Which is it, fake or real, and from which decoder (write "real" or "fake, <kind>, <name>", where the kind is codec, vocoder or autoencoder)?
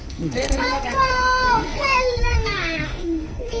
fake, codec, SNAC